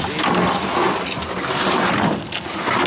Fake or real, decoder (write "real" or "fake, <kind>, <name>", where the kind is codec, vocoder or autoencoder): real